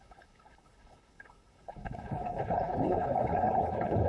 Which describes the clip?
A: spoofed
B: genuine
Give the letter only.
A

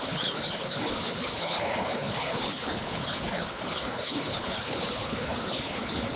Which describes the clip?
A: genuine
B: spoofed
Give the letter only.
B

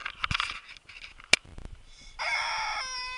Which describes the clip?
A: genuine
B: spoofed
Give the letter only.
A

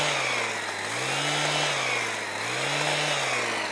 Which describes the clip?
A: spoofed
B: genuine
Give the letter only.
B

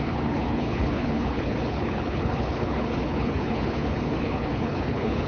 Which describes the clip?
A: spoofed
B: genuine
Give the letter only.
A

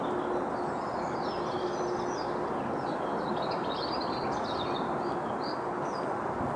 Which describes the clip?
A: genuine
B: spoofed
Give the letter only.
A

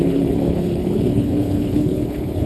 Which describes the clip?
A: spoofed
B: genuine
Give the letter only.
A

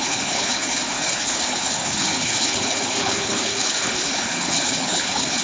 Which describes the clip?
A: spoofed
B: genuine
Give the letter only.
A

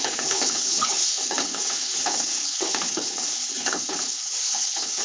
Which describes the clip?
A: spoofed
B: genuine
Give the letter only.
A